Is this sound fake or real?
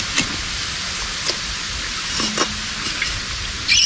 real